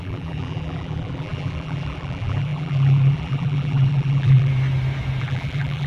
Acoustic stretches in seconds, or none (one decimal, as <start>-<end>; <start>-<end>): 4.5-5.2